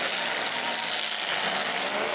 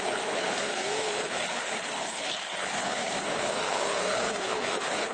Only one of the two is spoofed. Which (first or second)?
second